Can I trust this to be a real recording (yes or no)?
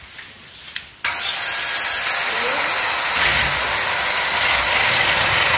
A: yes